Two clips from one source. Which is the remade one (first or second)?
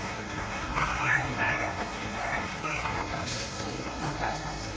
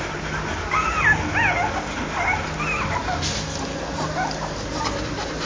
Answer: first